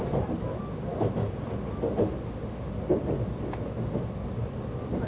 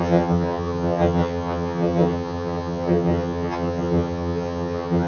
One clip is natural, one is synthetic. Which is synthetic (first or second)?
second